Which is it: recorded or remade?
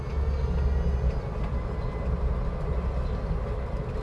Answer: recorded